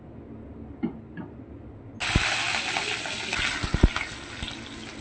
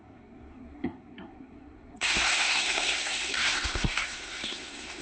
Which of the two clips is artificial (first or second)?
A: second